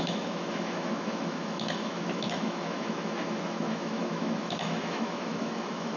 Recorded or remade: remade